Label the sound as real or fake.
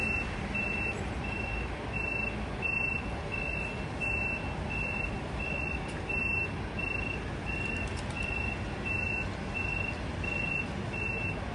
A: real